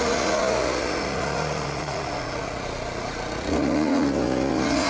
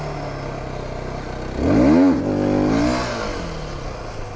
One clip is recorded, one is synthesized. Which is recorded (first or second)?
second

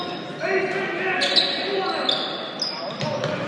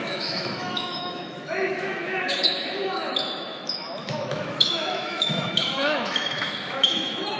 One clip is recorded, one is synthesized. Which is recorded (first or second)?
first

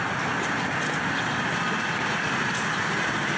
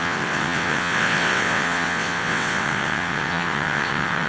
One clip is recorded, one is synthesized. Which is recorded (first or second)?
first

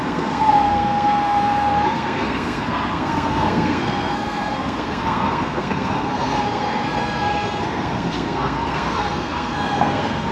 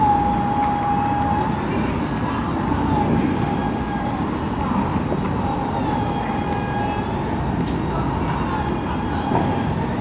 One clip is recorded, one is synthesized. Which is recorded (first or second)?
second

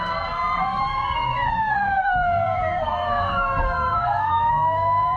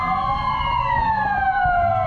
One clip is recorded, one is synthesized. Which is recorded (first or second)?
second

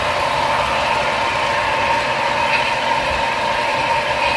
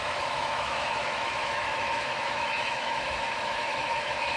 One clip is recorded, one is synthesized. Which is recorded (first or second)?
first